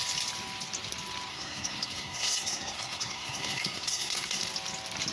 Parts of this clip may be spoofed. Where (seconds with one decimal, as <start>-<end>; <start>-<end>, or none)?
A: 1.3-4.4